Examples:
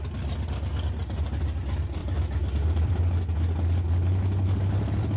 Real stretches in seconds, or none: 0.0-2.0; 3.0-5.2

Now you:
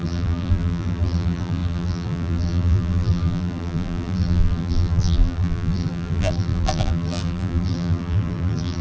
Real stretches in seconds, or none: none